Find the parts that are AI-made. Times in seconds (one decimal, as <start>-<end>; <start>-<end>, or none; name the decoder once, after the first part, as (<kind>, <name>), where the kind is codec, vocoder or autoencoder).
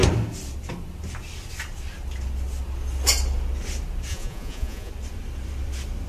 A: 4.1-4.9 (vocoder, Vocos)